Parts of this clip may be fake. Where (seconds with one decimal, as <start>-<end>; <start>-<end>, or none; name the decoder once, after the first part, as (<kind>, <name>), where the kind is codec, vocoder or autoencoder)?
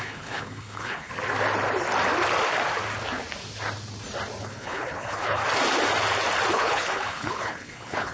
0.0-1.1 (codec, HILCodec); 4.4-5.4; 6.5-8.1